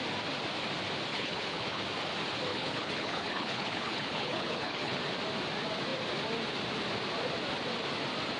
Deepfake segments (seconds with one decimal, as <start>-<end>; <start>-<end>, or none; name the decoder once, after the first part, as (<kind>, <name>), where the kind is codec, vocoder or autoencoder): 1.1-1.8 (codec, HILCodec); 2.5-5.0